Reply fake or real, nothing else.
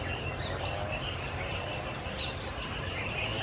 real